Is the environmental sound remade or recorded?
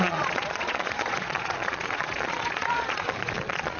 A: remade